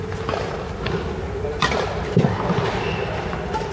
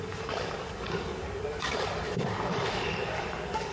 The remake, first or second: second